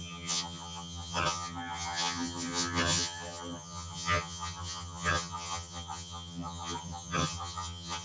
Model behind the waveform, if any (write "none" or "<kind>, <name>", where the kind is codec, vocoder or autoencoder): vocoder, HiFi-GAN